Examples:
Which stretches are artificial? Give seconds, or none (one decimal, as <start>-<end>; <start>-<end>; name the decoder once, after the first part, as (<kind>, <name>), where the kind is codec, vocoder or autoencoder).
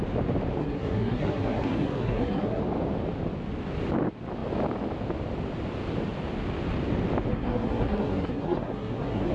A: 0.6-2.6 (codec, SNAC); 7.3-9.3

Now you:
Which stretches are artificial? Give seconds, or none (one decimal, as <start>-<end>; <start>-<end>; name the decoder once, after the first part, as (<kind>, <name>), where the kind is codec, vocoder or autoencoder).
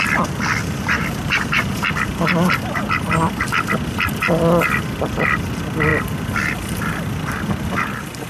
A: 0.6-2.0 (vocoder, BigVGAN v2)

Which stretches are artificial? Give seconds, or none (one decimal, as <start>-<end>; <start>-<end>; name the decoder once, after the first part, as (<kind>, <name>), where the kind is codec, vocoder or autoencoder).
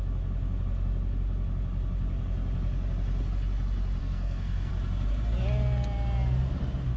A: 4.0-4.7 (codec, SNAC)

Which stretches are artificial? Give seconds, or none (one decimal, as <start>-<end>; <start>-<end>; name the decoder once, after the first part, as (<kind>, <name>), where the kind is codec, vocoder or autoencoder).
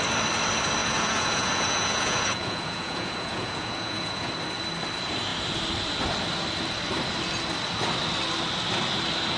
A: 0.8-4.3 (vocoder, Vocos)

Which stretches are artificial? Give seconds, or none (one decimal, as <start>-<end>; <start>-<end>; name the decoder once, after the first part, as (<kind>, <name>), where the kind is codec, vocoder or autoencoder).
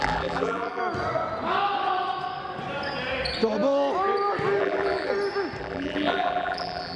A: 0.0-0.8 (vocoder, BigVGAN v2); 4.6-5.1; 5.6-7.0